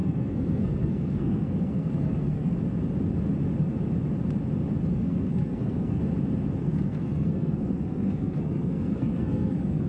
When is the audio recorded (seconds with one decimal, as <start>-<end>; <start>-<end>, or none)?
2.6-4.9; 6.0-6.6